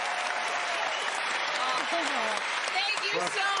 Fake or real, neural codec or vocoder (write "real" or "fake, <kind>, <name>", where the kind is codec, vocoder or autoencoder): fake, vocoder, BigVGAN v2